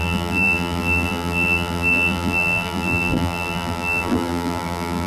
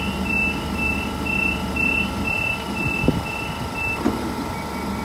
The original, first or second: second